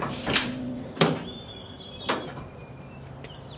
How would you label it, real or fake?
fake